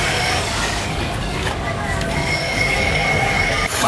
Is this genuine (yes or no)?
no